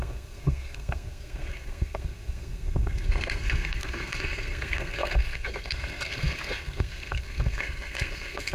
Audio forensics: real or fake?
fake